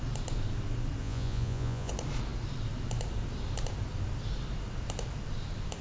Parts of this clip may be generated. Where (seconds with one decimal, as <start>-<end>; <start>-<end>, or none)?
1.0-1.9

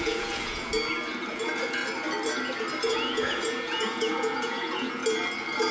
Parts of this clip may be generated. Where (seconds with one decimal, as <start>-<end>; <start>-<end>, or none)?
0.0-0.7; 1.3-1.8; 2.8-5.0

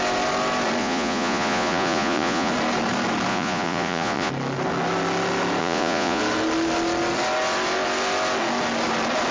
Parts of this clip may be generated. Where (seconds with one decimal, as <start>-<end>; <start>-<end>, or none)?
0.8-2.5; 3.3-4.3; 5.6-6.2

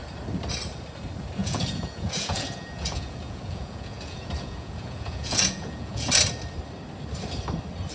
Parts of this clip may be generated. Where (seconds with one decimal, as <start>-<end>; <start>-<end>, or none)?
1.4-6.1